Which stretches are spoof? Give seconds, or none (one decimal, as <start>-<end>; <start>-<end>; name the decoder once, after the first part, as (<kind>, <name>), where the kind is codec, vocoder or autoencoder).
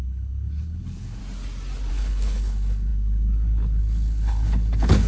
0.0-1.2 (codec, HILCodec); 1.9-5.1